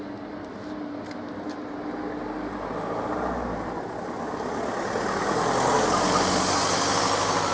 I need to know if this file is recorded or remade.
recorded